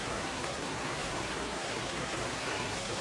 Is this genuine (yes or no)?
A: no